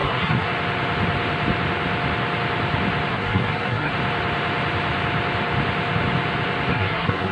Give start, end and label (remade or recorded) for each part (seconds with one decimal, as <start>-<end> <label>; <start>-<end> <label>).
0.0-0.5 remade; 0.5-3.1 recorded; 3.1-3.9 remade; 3.9-6.7 recorded; 6.7-7.3 remade